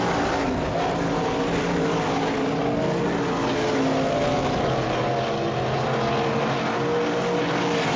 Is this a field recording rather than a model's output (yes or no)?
yes